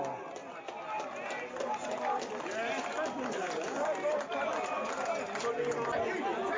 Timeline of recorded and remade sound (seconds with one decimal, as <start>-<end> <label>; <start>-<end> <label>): 0.0-6.6 recorded